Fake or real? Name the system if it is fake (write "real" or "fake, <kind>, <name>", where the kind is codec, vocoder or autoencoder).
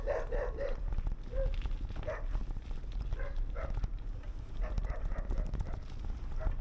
real